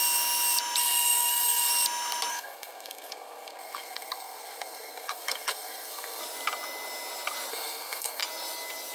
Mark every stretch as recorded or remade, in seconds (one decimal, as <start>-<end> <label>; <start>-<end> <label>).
0.0-0.8 recorded; 0.8-1.7 remade; 1.7-2.3 recorded; 2.3-6.2 remade; 6.2-7.5 recorded; 7.5-8.2 remade; 8.2-8.9 recorded